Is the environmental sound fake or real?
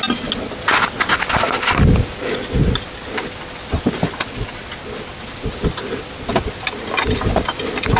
real